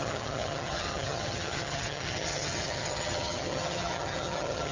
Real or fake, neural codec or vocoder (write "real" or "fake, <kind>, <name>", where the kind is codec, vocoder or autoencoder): fake, vocoder, HiFi-GAN